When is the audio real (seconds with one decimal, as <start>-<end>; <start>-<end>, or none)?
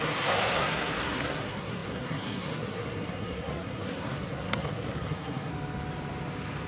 5.5-6.7